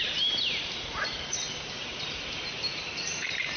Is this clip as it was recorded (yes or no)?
no